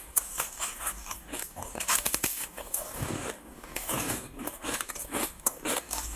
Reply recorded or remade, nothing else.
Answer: remade